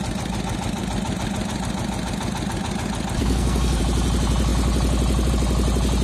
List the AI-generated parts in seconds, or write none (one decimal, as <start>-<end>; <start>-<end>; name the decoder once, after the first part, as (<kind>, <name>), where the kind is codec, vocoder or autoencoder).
3.2-3.8 (codec, SNAC)